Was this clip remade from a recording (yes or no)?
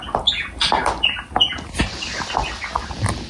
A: no